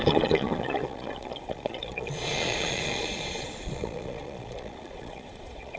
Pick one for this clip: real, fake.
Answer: fake